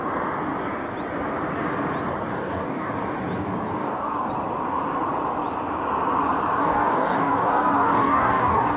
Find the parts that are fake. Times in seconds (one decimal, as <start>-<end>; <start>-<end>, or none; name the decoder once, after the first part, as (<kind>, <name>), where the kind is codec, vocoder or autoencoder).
2.3-2.9 (codec, DAC); 3.8-4.3; 6.6-8.8